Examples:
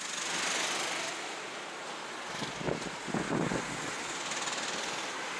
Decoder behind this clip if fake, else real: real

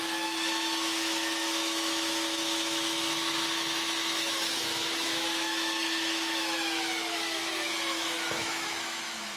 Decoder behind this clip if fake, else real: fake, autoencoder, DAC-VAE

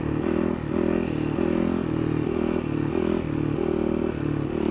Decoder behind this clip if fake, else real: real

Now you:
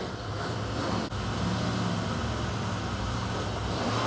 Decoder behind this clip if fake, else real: real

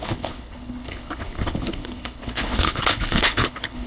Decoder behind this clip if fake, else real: fake, codec, HILCodec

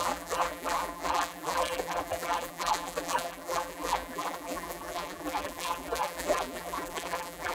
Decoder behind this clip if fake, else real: fake, vocoder, BigVGAN v2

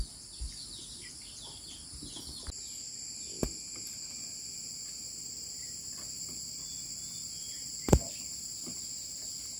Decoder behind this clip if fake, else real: real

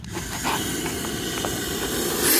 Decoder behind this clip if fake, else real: real